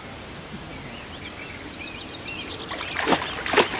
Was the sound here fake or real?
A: real